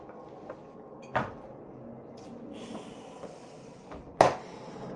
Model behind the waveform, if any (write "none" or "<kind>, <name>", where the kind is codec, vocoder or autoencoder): none